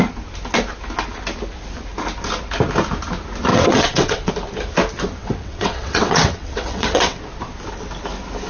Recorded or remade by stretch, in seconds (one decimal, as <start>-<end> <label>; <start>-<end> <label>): 0.0-3.5 recorded; 3.5-4.3 remade; 4.3-5.2 recorded; 5.2-7.2 remade; 7.2-8.5 recorded